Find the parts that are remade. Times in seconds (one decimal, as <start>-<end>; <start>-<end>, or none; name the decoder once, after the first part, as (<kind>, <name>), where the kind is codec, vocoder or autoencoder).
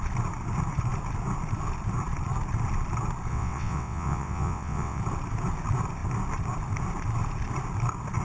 3.3-5.0 (vocoder, WaveNeXt)